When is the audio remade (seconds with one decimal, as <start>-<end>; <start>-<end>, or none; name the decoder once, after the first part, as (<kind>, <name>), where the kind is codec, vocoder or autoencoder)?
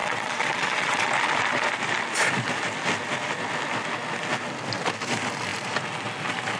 0.0-1.1 (vocoder, WaveNeXt)